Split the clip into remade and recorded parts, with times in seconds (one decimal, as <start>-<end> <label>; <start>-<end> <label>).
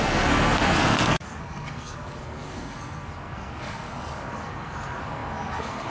0.0-5.9 remade